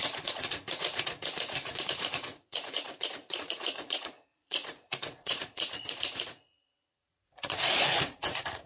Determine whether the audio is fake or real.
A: fake